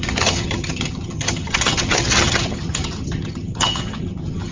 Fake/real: fake